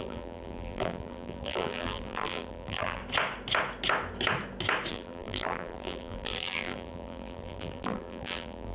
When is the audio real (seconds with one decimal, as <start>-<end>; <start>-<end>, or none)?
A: 3.0-4.9